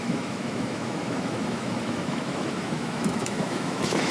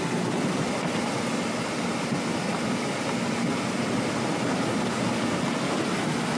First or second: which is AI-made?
first